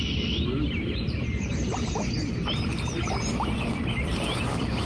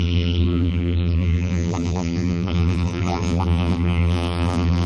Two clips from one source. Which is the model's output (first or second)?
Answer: second